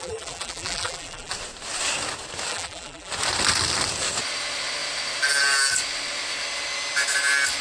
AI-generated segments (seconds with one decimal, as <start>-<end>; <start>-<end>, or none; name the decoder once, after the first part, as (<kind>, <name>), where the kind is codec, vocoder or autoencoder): 0.0-1.3 (vocoder, BigVGAN v2); 2.5-3.1